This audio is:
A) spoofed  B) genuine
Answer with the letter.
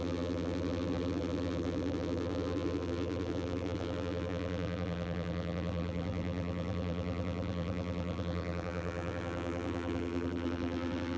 A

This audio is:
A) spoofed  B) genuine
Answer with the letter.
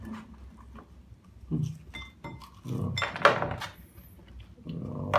B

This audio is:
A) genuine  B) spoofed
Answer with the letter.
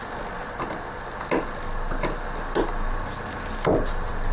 A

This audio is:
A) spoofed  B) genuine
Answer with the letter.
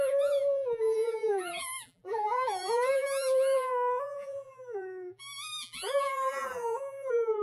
A